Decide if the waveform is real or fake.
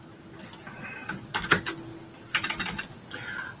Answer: real